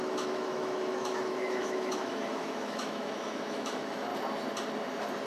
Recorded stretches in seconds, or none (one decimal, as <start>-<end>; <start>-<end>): 4.1-5.3